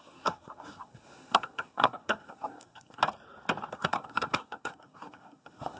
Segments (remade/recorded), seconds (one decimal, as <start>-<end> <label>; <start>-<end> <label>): 0.0-3.0 remade; 3.0-3.7 recorded; 3.7-5.8 remade